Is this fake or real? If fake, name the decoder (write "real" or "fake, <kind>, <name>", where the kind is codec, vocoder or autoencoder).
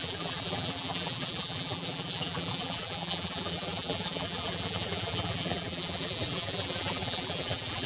fake, vocoder, BigVGAN v2